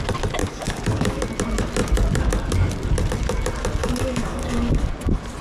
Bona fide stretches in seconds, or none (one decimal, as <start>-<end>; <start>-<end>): 0.0-0.4; 1.2-3.8; 4.9-5.4